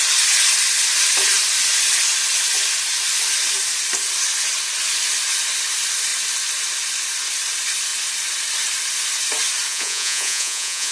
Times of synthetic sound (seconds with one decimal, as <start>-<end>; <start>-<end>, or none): 9.7-10.9